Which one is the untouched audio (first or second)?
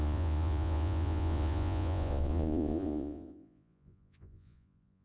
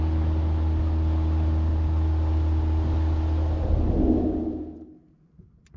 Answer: second